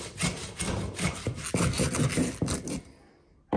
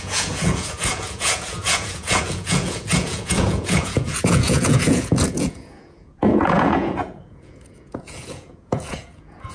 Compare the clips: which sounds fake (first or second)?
second